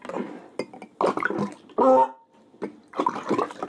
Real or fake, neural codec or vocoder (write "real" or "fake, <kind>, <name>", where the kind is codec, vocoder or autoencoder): real